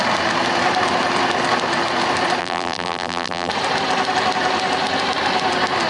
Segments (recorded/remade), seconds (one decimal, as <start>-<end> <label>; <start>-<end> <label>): 0.0-2.4 recorded; 2.4-3.5 remade; 3.5-5.9 recorded